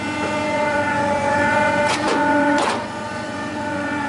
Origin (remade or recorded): remade